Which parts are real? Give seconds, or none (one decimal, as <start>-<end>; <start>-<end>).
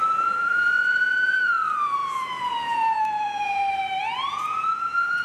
3.6-4.3